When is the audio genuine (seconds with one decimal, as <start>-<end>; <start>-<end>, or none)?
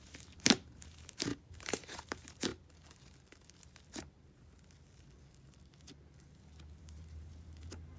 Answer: 2.5-6.8